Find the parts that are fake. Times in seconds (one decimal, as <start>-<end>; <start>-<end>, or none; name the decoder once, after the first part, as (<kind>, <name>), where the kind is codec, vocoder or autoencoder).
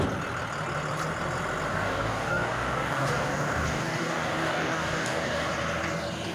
1.7-5.5 (codec, DAC)